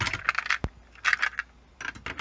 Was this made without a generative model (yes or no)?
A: yes